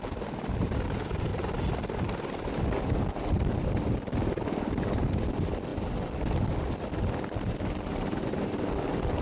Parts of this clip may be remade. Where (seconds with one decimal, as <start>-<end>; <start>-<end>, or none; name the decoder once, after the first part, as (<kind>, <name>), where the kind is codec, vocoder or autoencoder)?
none